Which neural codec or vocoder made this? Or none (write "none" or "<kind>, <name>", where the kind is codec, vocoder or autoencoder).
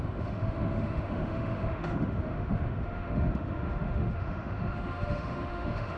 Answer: autoencoder, DAC-VAE